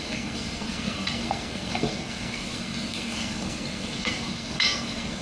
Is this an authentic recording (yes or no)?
no